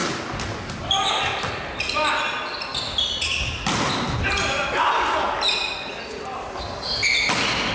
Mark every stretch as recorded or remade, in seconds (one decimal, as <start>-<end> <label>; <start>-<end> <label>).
0.0-7.7 recorded